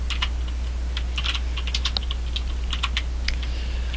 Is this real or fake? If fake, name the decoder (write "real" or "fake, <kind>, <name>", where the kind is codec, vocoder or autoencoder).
real